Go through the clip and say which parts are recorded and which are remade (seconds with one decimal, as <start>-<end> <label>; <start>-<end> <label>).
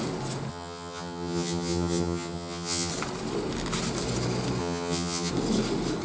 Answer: 0.0-0.5 recorded; 0.5-2.9 remade; 2.9-4.6 recorded; 4.6-5.3 remade; 5.3-6.0 recorded